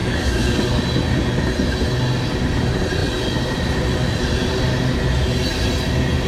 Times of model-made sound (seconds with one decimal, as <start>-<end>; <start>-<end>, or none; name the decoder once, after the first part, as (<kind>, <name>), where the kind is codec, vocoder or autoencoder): 0.0-0.8 (codec, DAC)